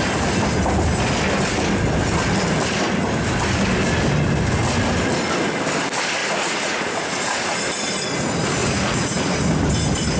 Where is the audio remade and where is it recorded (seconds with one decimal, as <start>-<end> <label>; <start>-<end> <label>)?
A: 0.0-6.2 recorded; 6.2-7.6 remade; 7.6-8.6 recorded; 8.6-9.4 remade; 9.4-10.2 recorded